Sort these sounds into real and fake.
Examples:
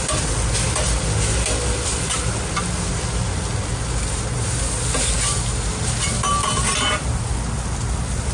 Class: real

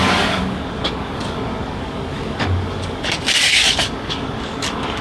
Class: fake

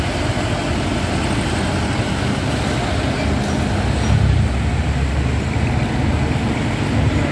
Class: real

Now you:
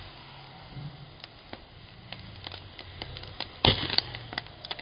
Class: real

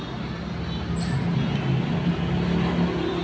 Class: real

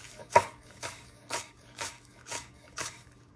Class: fake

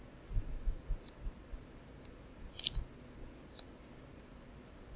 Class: real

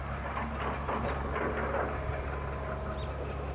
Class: real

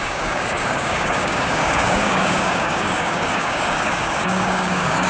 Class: fake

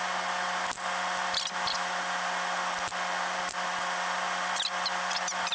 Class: real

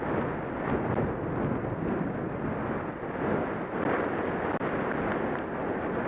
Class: real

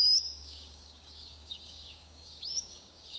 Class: fake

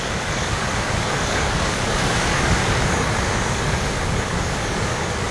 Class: fake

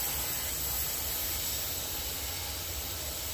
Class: real